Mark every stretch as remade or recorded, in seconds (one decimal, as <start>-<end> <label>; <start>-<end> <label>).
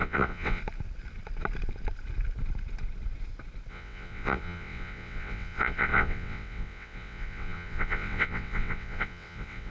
0.0-0.6 remade; 0.6-3.7 recorded; 3.7-9.7 remade